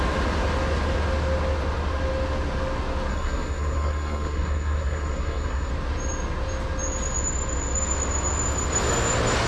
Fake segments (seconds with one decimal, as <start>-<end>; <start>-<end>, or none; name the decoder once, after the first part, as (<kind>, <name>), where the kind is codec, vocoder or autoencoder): 3.1-5.7 (codec, SNAC)